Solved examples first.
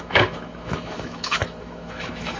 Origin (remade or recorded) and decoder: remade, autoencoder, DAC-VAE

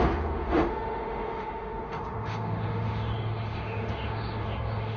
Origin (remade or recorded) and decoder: remade, autoencoder, DAC-VAE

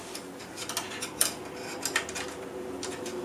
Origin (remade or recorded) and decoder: recorded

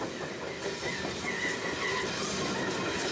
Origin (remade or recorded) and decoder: recorded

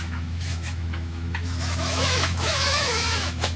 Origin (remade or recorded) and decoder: remade, autoencoder, DAC-VAE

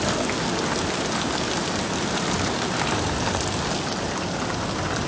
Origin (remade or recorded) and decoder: recorded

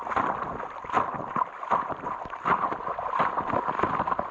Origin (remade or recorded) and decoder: recorded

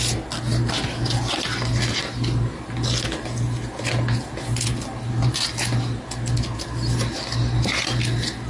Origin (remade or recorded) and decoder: recorded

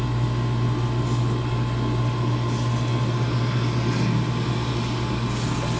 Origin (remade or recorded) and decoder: recorded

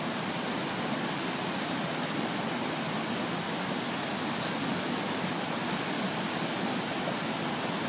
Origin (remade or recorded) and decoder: recorded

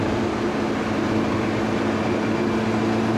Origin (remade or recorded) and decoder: recorded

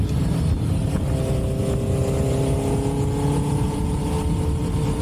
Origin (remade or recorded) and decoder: recorded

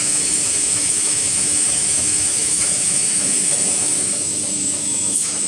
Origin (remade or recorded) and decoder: remade, autoencoder, DAC-VAE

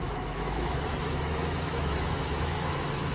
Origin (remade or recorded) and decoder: remade, autoencoder, DAC-VAE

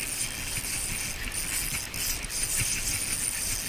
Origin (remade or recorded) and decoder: recorded